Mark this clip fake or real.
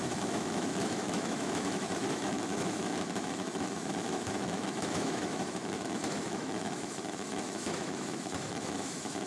fake